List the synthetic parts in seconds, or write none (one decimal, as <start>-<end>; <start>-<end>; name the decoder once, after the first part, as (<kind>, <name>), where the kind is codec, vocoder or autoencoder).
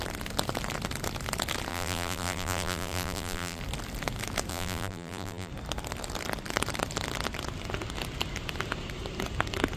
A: 1.7-3.6 (vocoder, BigVGAN v2); 4.5-5.5